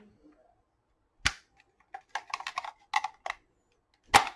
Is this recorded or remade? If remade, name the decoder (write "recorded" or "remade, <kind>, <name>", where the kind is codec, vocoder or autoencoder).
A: recorded